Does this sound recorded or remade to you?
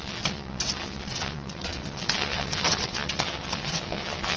remade